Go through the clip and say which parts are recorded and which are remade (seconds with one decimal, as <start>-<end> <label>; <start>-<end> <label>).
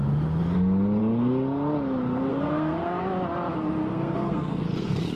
0.0-2.3 recorded; 2.3-3.0 remade; 3.0-3.9 recorded; 3.9-5.2 remade